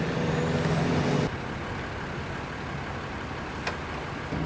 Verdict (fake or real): real